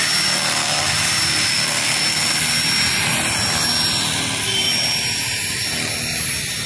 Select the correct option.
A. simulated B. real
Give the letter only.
B